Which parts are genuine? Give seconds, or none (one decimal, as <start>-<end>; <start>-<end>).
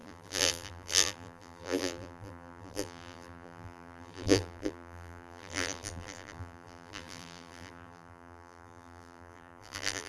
none